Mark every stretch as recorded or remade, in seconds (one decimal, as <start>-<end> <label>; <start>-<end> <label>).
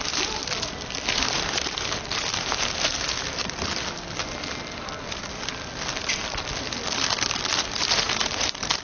0.0-0.4 remade; 0.4-1.1 recorded; 1.1-3.4 remade; 3.4-7.6 recorded; 7.6-8.8 remade